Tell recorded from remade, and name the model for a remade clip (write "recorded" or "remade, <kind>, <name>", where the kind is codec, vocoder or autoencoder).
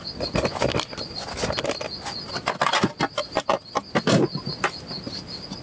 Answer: recorded